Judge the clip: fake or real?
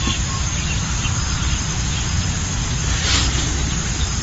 fake